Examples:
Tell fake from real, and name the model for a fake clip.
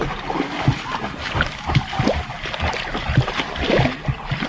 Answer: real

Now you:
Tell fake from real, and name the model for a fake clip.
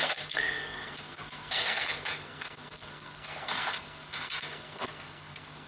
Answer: fake, codec, SNAC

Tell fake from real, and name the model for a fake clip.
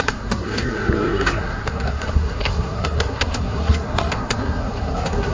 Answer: fake, codec, SNAC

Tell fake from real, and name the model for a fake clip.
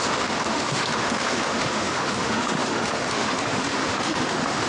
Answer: fake, autoencoder, DAC-VAE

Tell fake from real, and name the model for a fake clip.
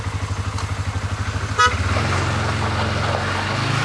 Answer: real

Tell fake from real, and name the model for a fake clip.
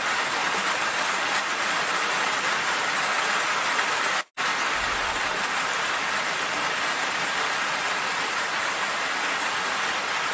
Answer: real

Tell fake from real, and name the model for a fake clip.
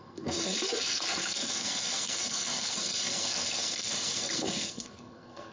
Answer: fake, codec, SNAC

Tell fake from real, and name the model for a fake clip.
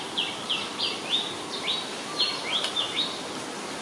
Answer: fake, vocoder, BigVGAN v2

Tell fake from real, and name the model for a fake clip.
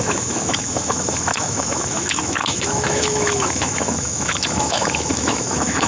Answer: fake, autoencoder, DAC-VAE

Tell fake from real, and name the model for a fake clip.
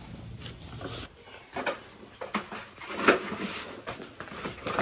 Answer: real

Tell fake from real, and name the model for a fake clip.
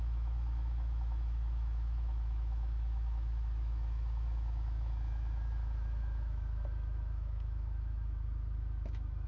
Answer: fake, autoencoder, DAC-VAE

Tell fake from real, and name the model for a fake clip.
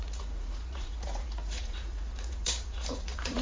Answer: fake, vocoder, Vocos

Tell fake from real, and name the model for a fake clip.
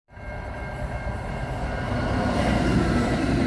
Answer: real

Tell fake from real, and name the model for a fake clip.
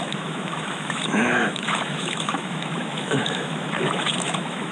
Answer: fake, autoencoder, DAC-VAE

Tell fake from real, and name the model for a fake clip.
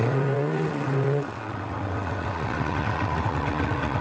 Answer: fake, vocoder, WaveNeXt